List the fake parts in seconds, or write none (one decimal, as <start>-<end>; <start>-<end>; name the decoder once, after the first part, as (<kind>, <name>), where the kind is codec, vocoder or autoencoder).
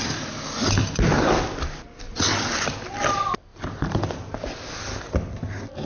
none